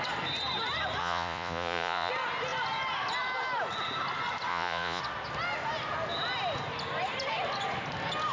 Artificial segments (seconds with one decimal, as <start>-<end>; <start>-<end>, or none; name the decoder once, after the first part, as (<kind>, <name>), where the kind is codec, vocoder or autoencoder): 1.0-2.1 (vocoder, Vocos); 4.5-5.0

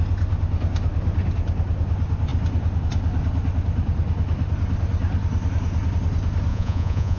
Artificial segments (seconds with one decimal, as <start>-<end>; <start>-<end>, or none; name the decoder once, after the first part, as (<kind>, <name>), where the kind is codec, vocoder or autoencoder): 6.5-7.2 (vocoder, Vocos)

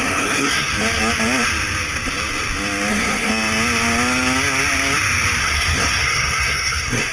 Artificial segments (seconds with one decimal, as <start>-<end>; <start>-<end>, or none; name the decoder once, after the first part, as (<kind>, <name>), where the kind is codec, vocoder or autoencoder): 0.0-0.7 (codec, SNAC); 2.9-3.3; 5.4-7.1

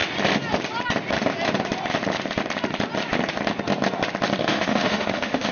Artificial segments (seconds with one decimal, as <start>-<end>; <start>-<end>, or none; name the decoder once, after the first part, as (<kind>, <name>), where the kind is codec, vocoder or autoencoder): 4.4-5.5 (autoencoder, DAC-VAE)